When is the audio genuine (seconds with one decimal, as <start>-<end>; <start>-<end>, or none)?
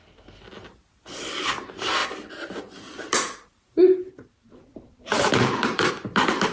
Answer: 0.0-2.0; 5.9-6.5